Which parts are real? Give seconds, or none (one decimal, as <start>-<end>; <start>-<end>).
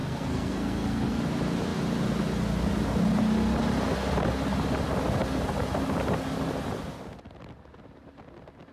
1.2-8.7